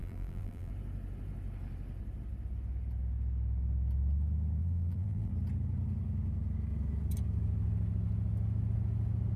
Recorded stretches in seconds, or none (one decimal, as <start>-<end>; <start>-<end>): 0.7-4.6; 5.3-9.4